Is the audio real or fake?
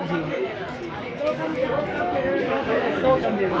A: fake